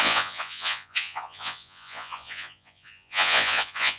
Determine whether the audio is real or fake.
fake